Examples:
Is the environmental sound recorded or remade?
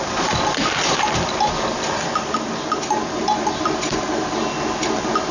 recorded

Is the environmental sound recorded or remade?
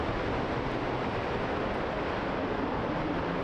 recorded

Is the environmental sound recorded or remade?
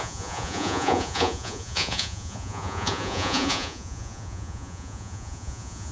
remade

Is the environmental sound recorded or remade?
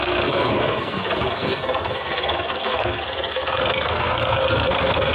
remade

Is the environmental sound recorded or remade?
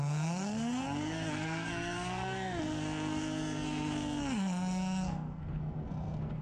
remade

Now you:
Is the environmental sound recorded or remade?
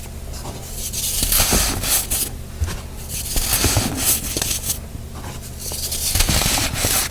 recorded